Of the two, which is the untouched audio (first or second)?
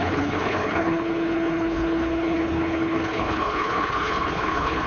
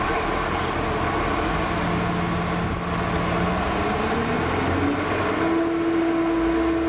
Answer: second